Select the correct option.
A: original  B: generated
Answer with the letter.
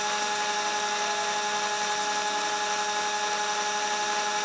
A